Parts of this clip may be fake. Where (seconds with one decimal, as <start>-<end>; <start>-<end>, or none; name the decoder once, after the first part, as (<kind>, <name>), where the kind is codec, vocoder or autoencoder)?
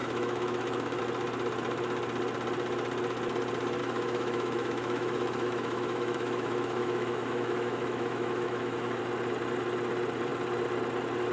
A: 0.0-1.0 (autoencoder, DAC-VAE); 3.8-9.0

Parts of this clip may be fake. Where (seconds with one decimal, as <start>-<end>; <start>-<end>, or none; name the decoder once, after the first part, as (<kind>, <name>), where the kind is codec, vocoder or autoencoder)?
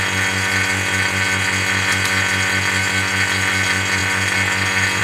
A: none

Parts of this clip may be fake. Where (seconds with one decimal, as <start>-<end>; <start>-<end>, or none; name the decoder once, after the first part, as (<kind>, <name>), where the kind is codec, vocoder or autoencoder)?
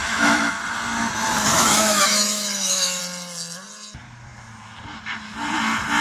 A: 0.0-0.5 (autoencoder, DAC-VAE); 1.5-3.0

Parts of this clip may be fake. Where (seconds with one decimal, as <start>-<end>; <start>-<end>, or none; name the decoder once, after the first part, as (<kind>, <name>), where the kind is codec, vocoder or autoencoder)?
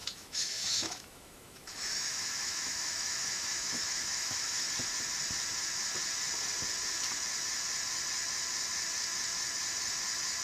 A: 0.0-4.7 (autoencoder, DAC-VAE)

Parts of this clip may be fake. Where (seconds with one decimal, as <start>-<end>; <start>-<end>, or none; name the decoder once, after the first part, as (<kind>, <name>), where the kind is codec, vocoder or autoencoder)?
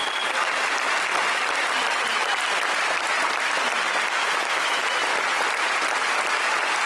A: 4.2-4.8 (autoencoder, DAC-VAE)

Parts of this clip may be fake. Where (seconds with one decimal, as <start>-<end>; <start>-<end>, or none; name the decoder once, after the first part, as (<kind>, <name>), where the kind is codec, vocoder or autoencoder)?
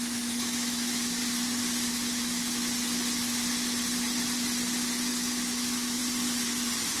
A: 0.0-1.2 (autoencoder, DAC-VAE); 1.9-2.6; 5.1-6.0